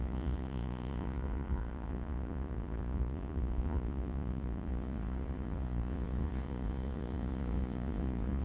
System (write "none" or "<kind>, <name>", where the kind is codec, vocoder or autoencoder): vocoder, Vocos